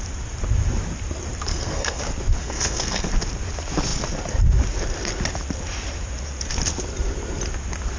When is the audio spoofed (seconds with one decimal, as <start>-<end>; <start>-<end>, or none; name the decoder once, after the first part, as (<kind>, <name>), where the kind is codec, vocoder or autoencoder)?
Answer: 1.5-2.0 (codec, SNAC); 2.4-3.1